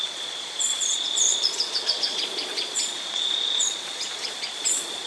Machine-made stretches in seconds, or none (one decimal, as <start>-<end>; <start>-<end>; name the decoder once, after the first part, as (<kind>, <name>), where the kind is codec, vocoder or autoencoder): 0.0-5.1 (vocoder, Vocos)